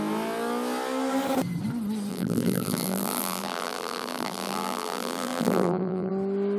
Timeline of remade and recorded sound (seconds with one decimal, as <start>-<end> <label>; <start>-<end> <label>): 0.0-2.1 recorded; 2.1-6.1 remade; 6.1-6.6 recorded